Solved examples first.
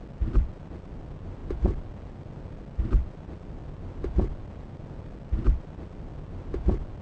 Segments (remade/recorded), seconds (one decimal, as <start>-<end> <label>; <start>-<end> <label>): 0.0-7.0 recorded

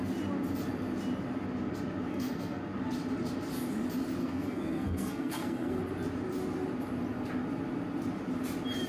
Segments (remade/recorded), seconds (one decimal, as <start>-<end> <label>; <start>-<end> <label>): 0.0-2.1 recorded; 2.1-2.6 remade; 2.6-4.2 recorded; 4.2-5.8 remade; 5.8-8.9 recorded

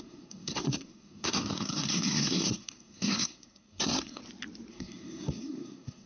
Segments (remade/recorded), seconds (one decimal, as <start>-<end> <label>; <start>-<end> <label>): 0.0-4.2 remade; 4.2-4.7 recorded; 4.7-6.1 remade

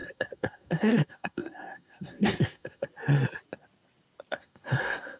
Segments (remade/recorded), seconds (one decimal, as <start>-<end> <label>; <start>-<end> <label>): 0.0-2.9 remade; 2.9-4.3 recorded; 4.3-5.2 remade

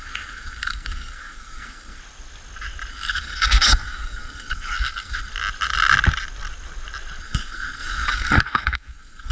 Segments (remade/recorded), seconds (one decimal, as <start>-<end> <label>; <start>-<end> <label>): 0.0-2.0 remade; 2.0-2.9 recorded; 2.9-5.3 remade; 5.3-7.2 recorded; 7.2-9.3 remade

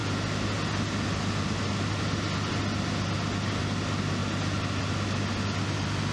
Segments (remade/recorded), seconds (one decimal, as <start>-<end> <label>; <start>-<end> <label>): 0.0-6.1 recorded

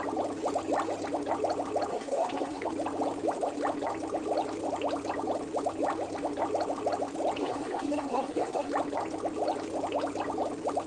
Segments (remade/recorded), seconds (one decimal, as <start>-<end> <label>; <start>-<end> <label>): 0.0-1.9 recorded; 1.9-2.7 remade; 2.7-7.4 recorded; 7.4-8.7 remade; 8.7-10.9 recorded